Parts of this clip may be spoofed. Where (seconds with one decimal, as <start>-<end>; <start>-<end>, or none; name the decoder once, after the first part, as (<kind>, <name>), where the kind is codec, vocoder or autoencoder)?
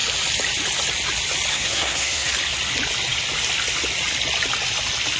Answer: 1.5-2.3 (codec, SNAC)